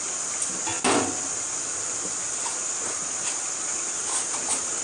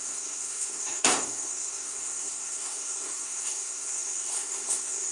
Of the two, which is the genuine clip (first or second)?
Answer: first